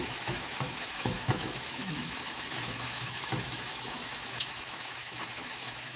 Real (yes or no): no